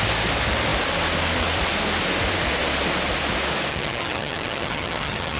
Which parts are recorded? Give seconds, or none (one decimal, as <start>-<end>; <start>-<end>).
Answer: 0.0-3.7